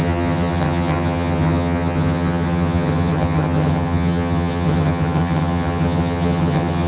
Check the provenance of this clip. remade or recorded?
remade